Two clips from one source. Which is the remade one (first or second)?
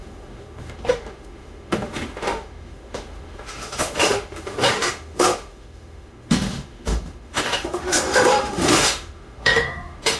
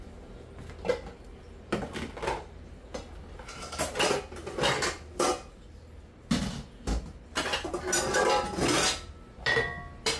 first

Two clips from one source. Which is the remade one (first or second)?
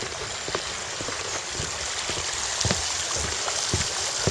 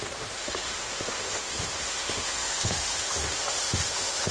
second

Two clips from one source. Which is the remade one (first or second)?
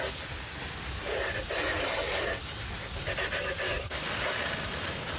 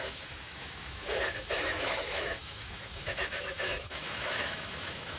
second